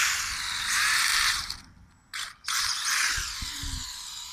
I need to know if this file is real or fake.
real